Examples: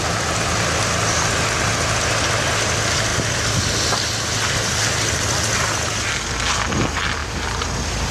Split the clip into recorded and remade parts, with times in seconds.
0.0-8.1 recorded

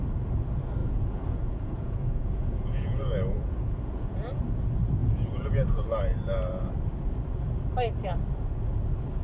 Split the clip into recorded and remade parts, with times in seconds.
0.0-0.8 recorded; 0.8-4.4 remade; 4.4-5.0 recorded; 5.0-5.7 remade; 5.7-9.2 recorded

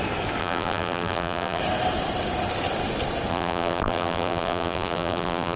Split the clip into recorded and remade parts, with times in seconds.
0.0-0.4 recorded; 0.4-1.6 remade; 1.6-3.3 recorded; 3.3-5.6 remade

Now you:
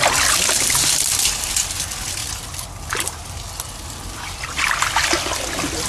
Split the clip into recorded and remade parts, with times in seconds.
0.0-5.9 recorded

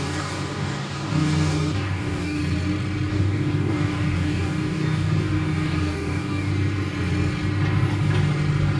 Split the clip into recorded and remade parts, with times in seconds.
0.0-2.4 remade; 2.4-3.1 recorded; 3.1-6.5 remade; 6.5-8.8 recorded

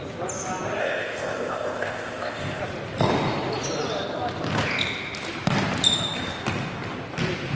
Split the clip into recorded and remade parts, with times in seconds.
0.0-0.8 recorded; 0.8-2.6 remade; 2.6-7.5 recorded